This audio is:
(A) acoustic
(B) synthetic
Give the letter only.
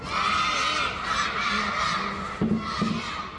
A